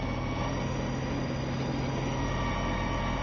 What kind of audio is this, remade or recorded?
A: recorded